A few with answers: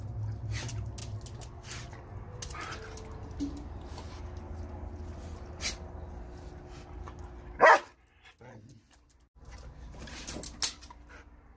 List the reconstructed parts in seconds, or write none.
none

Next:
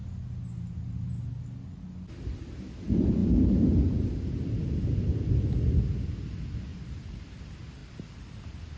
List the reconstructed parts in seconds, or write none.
6.7-7.3 (vocoder, BigVGAN v2); 7.8-8.8

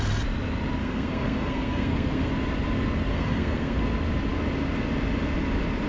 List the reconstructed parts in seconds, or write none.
0.8-2.3 (codec, SNAC); 3.1-3.8

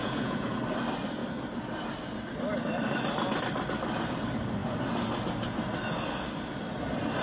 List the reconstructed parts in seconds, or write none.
0.0-0.6 (vocoder, Vocos)

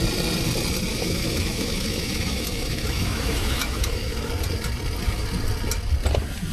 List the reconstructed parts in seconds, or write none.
0.9-4.3 (autoencoder, DAC-VAE)